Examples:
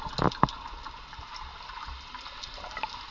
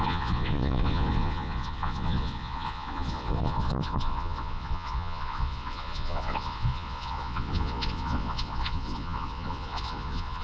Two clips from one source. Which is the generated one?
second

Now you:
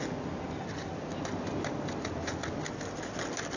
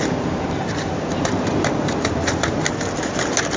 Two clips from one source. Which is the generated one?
second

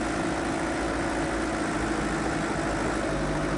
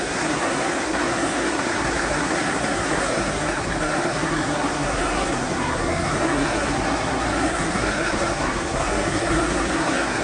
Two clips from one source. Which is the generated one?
second